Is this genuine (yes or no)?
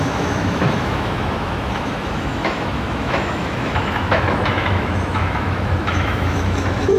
no